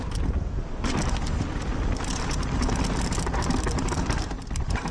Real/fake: real